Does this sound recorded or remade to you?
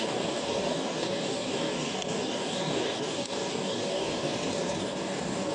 remade